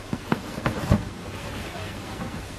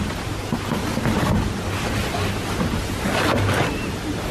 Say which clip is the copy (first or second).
first